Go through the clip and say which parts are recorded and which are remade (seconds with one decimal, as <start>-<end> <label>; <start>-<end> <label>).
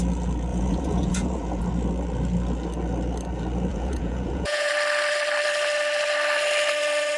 0.0-0.5 recorded; 0.5-1.6 remade; 1.6-3.7 recorded; 3.7-4.7 remade; 4.7-7.2 recorded